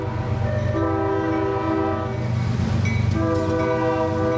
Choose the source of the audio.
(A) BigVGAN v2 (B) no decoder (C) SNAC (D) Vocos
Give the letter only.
B